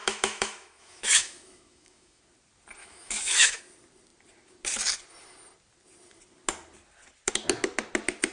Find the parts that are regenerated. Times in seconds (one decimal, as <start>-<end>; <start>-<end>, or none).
0.0-2.2; 2.8-3.6

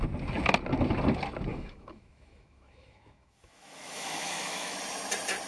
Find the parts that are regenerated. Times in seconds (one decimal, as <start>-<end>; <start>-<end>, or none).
1.5-4.8

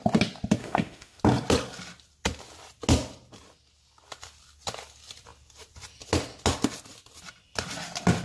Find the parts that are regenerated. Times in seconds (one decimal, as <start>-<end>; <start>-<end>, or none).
0.6-1.2

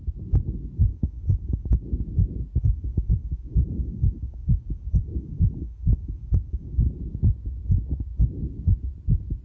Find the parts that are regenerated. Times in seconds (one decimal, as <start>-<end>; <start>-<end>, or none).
0.9-1.7; 2.6-6.9

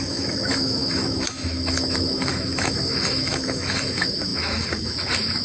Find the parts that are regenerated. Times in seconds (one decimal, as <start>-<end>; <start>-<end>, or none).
0.0-5.4

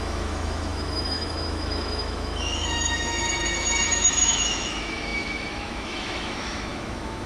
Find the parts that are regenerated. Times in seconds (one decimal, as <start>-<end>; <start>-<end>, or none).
0.0-7.3

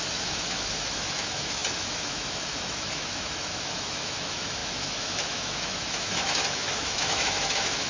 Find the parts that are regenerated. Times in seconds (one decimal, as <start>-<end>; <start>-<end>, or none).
0.0-7.9

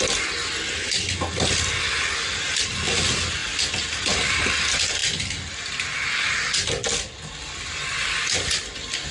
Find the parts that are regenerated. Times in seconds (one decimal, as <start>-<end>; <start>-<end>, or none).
none